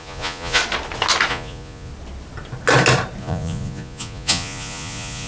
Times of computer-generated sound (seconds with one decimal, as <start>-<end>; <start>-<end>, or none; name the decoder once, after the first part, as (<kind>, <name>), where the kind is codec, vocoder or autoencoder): 0.0-0.6 (vocoder, Vocos); 1.3-1.9; 3.2-5.3